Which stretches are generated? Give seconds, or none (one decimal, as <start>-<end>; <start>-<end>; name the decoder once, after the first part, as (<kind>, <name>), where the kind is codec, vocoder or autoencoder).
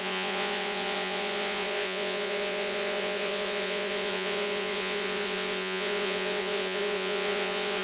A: 0.0-7.8 (vocoder, Vocos)